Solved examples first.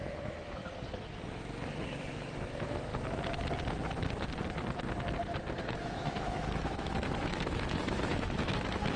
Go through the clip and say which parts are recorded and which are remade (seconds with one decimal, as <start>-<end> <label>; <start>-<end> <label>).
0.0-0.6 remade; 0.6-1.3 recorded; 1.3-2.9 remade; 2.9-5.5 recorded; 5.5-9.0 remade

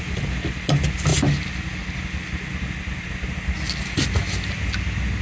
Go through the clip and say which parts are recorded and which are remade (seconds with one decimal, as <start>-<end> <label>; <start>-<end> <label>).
0.0-5.2 recorded

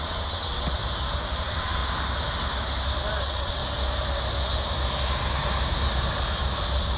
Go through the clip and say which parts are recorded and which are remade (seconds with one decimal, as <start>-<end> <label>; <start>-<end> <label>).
0.0-0.8 remade; 0.8-1.4 recorded; 1.4-1.8 remade; 1.8-3.2 recorded; 3.2-3.6 remade; 3.6-7.0 recorded